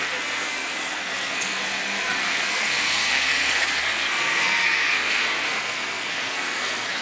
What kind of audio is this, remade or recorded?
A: remade